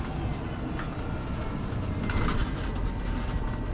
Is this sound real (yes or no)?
yes